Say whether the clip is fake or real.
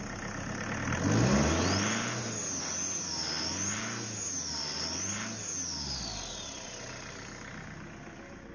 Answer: real